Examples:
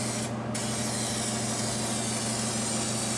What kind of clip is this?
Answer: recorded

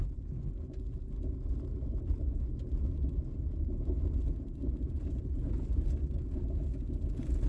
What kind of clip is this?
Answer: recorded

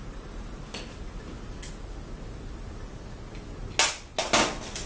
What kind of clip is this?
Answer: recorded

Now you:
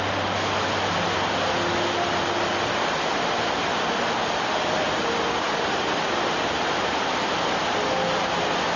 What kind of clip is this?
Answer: recorded